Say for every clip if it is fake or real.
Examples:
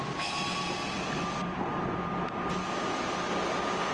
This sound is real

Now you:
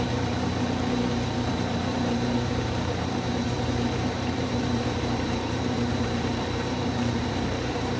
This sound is fake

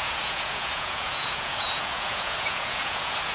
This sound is fake